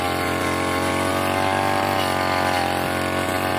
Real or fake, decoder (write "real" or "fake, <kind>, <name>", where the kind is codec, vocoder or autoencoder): real